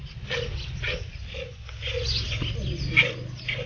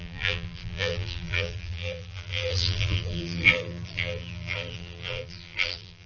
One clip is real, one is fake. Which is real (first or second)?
first